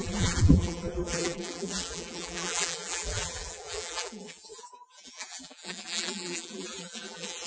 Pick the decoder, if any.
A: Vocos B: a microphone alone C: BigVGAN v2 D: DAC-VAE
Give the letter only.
C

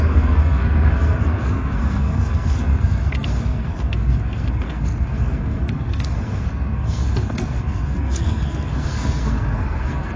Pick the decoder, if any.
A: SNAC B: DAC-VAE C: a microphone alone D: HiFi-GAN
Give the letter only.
A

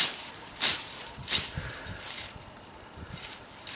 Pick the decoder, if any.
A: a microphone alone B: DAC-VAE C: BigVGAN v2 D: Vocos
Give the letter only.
A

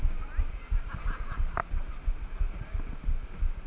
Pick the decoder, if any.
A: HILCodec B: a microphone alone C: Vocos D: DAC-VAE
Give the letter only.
B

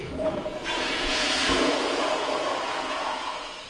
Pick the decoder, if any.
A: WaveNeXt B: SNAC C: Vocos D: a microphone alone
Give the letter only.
C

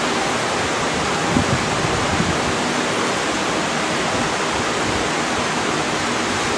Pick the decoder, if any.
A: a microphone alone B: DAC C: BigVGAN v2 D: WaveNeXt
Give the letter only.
A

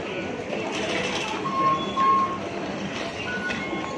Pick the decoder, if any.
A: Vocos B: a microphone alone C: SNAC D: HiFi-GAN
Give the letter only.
B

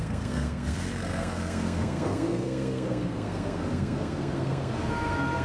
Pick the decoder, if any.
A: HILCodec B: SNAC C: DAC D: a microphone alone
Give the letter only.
B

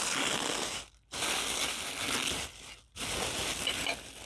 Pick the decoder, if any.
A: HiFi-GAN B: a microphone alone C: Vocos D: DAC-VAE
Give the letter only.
B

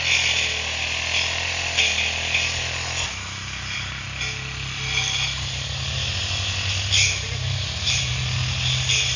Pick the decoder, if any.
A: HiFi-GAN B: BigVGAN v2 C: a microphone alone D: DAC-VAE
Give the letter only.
C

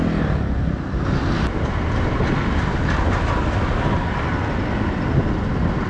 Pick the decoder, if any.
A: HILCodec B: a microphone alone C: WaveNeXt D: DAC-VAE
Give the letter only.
B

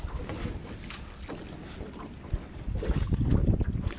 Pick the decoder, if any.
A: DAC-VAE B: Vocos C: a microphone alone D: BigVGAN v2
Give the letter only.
C